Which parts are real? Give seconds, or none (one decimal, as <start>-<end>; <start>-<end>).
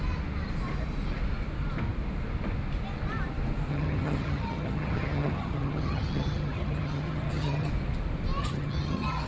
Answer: 0.0-3.7; 7.7-8.4